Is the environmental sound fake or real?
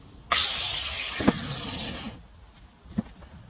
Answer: real